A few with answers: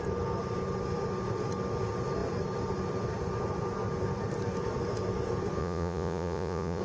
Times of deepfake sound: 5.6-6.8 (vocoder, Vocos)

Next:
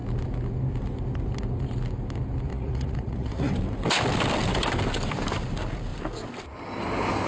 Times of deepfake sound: 2.5-3.5 (vocoder, Vocos)

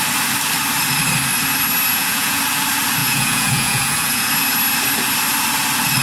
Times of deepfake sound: 1.9-2.4 (vocoder, Vocos); 3.0-4.3